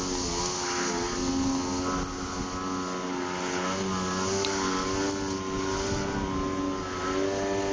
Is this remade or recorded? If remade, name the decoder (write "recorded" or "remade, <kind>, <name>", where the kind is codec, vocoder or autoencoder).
recorded